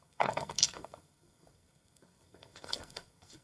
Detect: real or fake fake